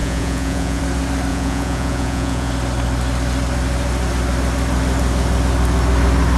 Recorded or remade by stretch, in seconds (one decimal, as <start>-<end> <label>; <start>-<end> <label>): 0.0-0.8 remade; 0.8-1.3 recorded; 1.3-2.5 remade; 2.5-6.4 recorded